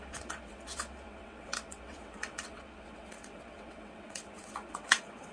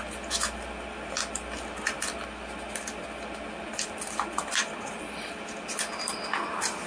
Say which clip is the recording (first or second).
second